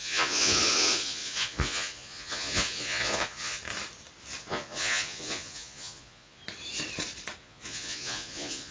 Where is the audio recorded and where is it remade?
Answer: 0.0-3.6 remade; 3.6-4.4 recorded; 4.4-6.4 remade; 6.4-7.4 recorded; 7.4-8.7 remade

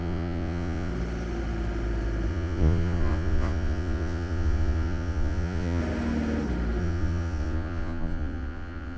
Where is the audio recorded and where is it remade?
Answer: 0.0-0.9 remade; 0.9-2.3 recorded; 2.3-5.8 remade; 5.8-6.8 recorded; 6.8-9.0 remade

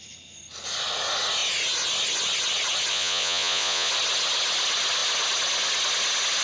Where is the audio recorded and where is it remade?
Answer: 0.0-2.9 recorded; 2.9-3.9 remade; 3.9-6.4 recorded

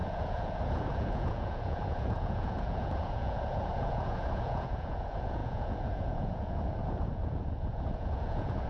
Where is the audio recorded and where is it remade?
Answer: 0.0-8.7 remade

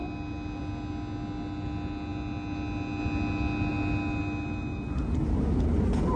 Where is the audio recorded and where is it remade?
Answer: 0.0-6.2 recorded

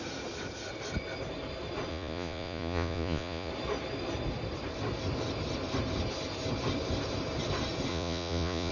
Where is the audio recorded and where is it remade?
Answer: 0.0-1.9 recorded; 1.9-3.5 remade; 3.5-7.9 recorded; 7.9-8.7 remade

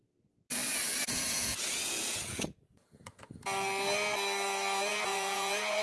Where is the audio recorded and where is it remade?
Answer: 0.0-0.6 recorded; 0.6-3.3 remade; 3.3-4.9 recorded; 4.9-5.8 remade